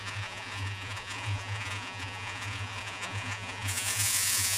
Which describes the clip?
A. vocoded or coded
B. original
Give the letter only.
A